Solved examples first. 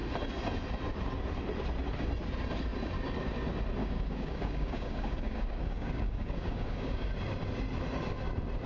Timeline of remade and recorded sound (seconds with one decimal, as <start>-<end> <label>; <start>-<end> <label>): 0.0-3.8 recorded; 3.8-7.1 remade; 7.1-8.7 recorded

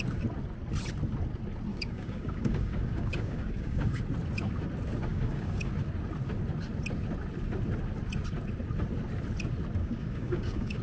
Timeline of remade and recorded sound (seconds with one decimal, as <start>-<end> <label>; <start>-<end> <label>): 0.0-1.7 recorded; 1.7-4.0 remade; 4.0-5.1 recorded; 5.1-5.7 remade; 5.7-9.8 recorded; 9.8-10.8 remade

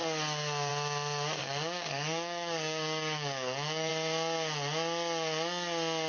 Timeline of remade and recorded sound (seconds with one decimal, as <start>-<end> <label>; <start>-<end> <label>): 0.0-1.4 recorded; 1.4-3.9 remade; 3.9-6.1 recorded

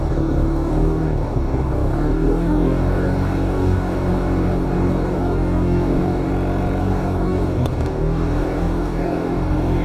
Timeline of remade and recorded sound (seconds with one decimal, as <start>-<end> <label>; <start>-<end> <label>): 0.0-6.3 remade; 6.3-6.8 recorded; 6.8-9.8 remade